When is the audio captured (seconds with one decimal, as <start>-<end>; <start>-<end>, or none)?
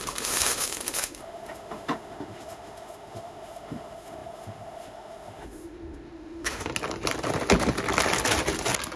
6.7-9.0